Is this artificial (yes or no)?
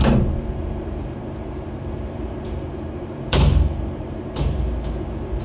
yes